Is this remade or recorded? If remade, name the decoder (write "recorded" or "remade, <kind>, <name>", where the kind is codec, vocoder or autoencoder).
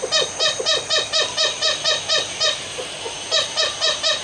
recorded